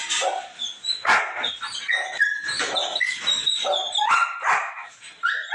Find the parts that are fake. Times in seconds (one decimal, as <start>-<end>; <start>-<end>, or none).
4.6-5.1